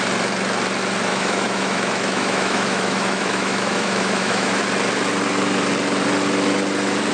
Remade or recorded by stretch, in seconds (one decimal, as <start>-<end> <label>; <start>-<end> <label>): 0.0-1.1 recorded; 1.1-4.6 remade; 4.6-7.1 recorded